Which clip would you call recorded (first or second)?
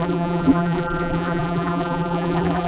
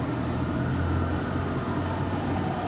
second